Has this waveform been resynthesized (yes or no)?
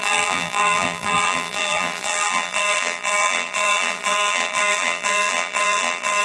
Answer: yes